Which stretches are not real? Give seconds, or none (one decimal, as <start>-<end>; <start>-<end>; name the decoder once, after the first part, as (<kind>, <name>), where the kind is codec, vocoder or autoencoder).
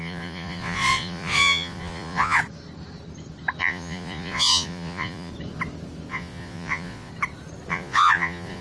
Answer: 0.0-2.4 (vocoder, Vocos); 3.6-5.3; 6.1-7.1; 7.7-8.6